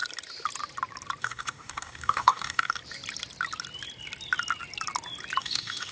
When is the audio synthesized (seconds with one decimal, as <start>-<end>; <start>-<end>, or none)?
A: 1.2-2.8; 5.4-5.9